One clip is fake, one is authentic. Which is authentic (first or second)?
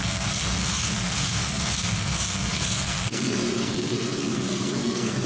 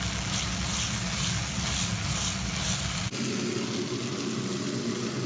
second